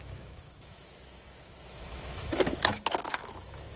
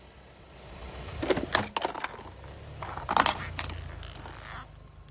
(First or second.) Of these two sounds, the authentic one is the second